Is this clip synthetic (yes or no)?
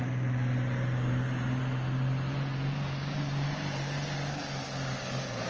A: no